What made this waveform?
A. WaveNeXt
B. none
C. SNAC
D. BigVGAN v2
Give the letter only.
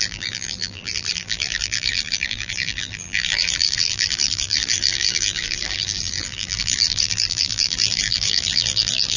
D